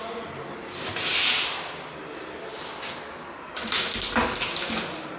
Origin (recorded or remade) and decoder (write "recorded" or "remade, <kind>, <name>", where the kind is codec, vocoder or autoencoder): recorded